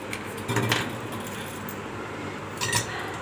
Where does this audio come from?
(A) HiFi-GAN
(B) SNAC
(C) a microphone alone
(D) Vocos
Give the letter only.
C